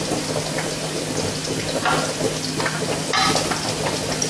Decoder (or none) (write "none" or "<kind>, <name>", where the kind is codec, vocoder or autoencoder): none